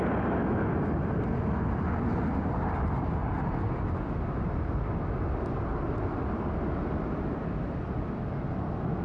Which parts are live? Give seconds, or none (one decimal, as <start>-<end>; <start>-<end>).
0.0-9.0